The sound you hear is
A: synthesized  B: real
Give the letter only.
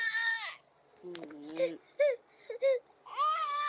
B